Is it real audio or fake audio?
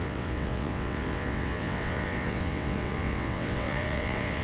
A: fake